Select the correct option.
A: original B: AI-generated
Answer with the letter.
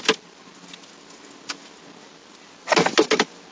A